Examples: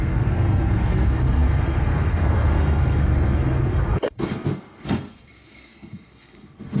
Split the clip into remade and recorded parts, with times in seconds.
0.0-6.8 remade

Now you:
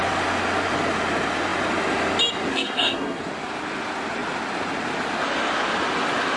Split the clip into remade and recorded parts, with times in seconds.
0.0-2.5 recorded; 2.5-3.2 remade; 3.2-6.4 recorded

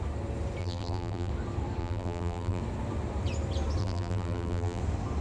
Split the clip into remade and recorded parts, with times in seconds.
0.0-0.6 recorded; 0.6-1.3 remade; 1.3-1.8 recorded; 1.8-2.6 remade; 2.6-3.8 recorded; 3.8-4.8 remade; 4.8-5.2 recorded

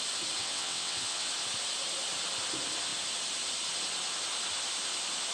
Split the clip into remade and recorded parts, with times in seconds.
0.0-0.4 recorded; 0.4-1.3 remade; 1.3-5.3 recorded

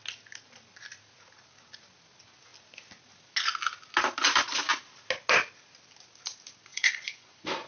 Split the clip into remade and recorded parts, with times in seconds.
0.0-6.7 recorded; 6.7-7.7 remade

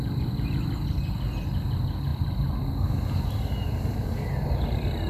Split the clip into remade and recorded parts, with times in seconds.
0.0-2.1 recorded; 2.1-4.3 remade; 4.3-5.1 recorded

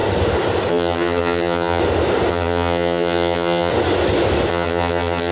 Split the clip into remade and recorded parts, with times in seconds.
0.0-0.7 recorded; 0.7-1.8 remade; 1.8-2.3 recorded; 2.3-3.7 remade; 3.7-4.5 recorded; 4.5-5.3 remade